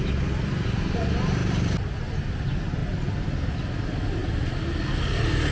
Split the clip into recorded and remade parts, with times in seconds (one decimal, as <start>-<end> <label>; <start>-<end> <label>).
0.0-5.5 recorded